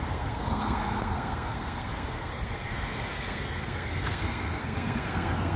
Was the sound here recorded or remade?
remade